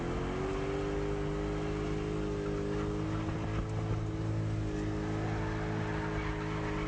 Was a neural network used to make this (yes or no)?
no